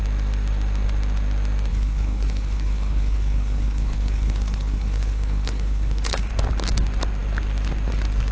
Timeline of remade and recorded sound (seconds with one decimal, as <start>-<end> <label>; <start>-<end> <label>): 0.0-1.7 recorded; 1.7-6.3 remade; 6.3-8.3 recorded